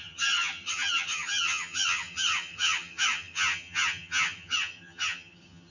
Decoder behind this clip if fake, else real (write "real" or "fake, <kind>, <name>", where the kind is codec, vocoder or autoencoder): fake, vocoder, HiFi-GAN